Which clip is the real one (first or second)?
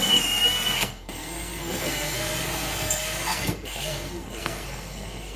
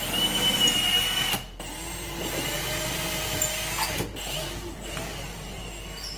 second